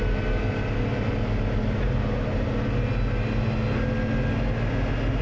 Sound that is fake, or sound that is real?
real